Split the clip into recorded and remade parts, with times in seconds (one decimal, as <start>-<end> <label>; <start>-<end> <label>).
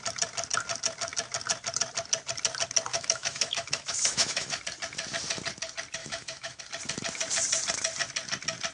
0.0-2.9 recorded; 2.9-4.6 remade; 4.6-6.0 recorded; 6.0-6.6 remade; 6.6-8.7 recorded